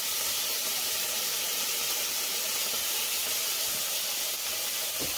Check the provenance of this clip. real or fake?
real